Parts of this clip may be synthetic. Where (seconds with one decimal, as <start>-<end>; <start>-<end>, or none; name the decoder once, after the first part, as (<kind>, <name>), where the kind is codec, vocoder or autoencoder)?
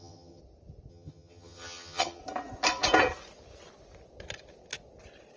0.0-0.4 (vocoder, HiFi-GAN); 0.9-2.2